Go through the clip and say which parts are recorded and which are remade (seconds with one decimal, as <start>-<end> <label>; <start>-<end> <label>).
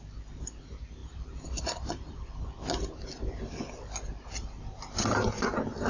0.0-5.9 recorded